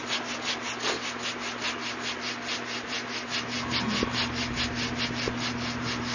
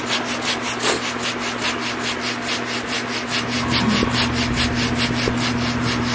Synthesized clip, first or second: second